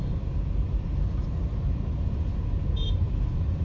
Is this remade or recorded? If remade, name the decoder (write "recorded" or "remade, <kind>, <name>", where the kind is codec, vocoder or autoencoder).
recorded